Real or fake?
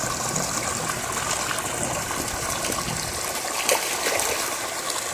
real